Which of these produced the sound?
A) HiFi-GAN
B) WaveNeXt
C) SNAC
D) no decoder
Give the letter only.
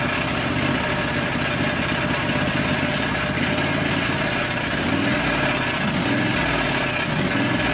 D